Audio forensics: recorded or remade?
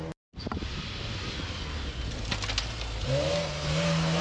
recorded